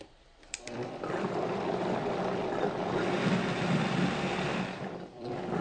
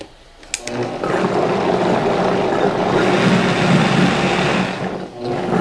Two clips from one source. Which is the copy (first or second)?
first